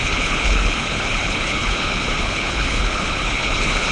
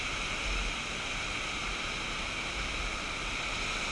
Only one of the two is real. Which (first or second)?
second